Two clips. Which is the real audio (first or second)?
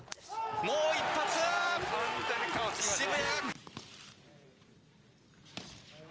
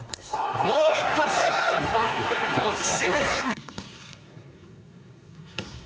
first